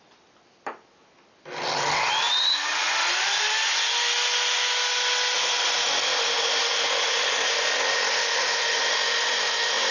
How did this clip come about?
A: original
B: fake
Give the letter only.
A